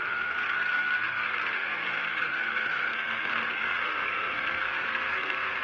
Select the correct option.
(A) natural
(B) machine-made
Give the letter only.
B